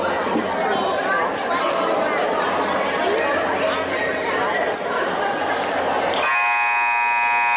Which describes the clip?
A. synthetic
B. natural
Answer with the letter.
B